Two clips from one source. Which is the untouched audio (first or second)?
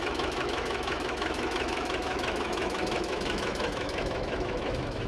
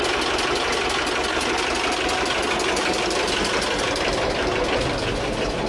second